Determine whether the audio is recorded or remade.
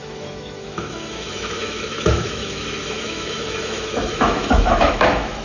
remade